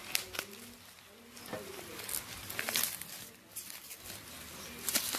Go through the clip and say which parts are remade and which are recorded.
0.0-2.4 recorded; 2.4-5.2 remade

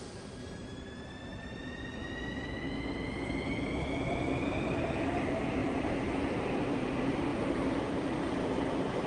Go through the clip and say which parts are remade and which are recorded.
0.0-0.4 recorded; 0.4-1.0 remade; 1.0-5.6 recorded; 5.6-6.1 remade; 6.1-9.1 recorded

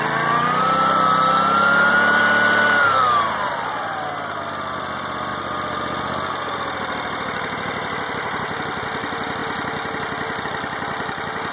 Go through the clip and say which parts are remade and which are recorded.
0.0-5.3 remade; 5.3-6.3 recorded; 6.3-9.4 remade; 9.4-10.4 recorded; 10.4-11.5 remade

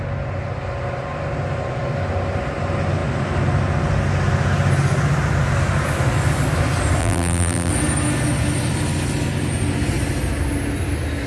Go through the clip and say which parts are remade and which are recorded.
0.0-7.0 recorded; 7.0-7.7 remade; 7.7-11.3 recorded

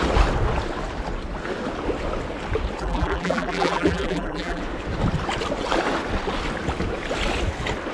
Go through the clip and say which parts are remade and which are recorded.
0.0-2.8 recorded; 2.8-4.6 remade; 4.6-7.9 recorded